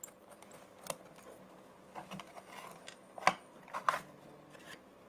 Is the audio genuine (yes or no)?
yes